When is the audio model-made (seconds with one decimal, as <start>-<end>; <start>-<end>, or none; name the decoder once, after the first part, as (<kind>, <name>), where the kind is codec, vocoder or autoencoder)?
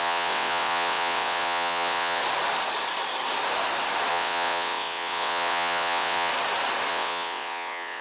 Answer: 0.0-2.2 (vocoder, WaveNeXt); 4.1-6.3; 6.9-8.0